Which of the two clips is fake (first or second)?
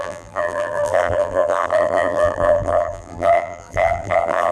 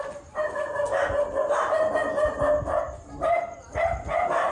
first